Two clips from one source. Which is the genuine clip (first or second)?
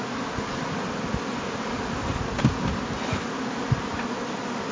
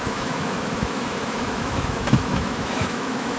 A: first